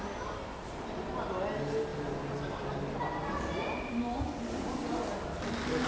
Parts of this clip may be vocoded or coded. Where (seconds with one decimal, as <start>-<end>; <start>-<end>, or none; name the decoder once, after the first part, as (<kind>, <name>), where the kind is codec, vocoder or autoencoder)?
none